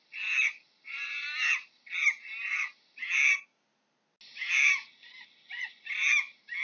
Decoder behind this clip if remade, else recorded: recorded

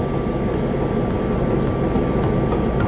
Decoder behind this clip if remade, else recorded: recorded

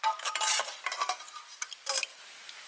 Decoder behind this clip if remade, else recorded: recorded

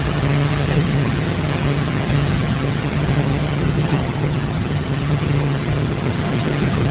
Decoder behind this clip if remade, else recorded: remade, vocoder, HiFi-GAN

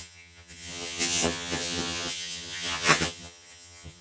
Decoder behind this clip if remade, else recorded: remade, vocoder, HiFi-GAN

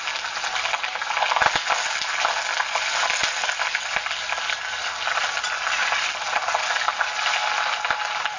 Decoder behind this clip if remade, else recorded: recorded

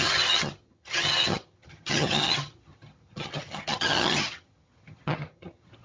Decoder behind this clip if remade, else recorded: remade, vocoder, HiFi-GAN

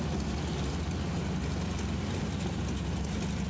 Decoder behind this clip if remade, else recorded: recorded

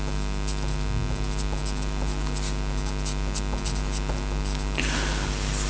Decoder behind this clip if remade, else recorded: recorded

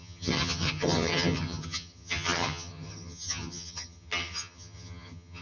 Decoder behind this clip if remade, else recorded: remade, vocoder, HiFi-GAN